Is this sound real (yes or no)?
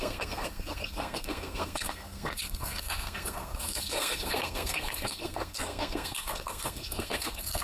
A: no